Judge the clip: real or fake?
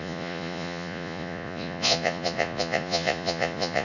fake